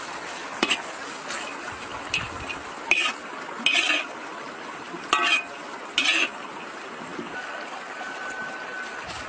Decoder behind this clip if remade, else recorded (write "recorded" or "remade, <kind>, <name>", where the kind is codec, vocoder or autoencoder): recorded